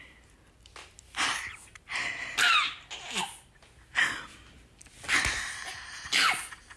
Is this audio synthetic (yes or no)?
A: no